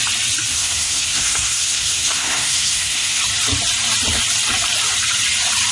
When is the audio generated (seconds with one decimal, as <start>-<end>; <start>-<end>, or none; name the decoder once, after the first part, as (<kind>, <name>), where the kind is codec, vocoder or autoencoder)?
0.5-3.2 (codec, SNAC)